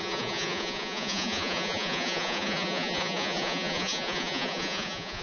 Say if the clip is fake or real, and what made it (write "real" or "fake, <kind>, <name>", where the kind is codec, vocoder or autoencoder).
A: fake, vocoder, Vocos